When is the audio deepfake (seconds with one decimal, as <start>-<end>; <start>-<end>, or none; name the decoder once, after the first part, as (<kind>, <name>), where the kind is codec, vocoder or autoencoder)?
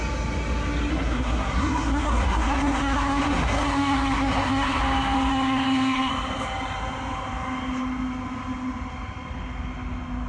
0.9-4.8 (codec, SNAC); 5.3-6.1